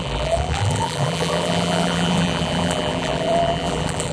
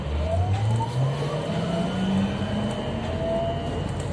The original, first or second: second